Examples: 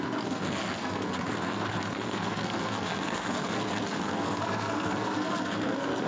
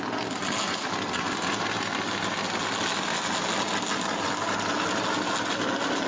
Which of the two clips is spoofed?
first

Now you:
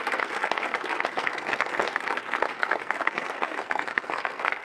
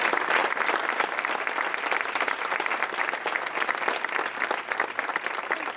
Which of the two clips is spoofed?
first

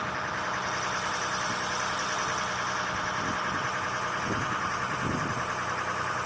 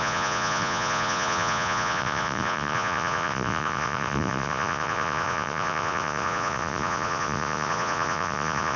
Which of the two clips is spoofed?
second